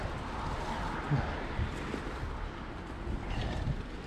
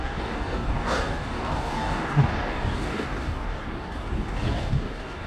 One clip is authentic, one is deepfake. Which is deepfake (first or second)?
second